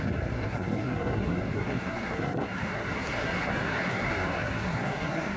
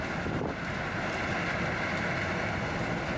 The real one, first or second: second